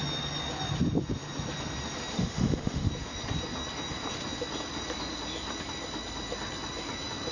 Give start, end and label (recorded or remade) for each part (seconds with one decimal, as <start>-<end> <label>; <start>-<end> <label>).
0.0-2.1 recorded; 2.1-2.9 remade; 2.9-7.3 recorded